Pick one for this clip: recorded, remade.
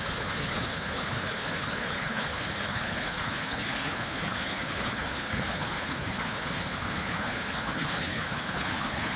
remade